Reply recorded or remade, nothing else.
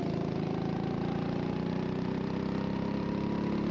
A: remade